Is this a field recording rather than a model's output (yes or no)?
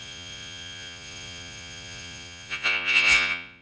no